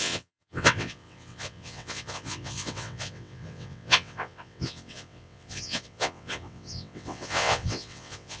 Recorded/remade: remade